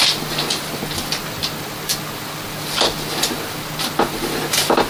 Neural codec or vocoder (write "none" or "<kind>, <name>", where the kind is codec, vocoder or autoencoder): none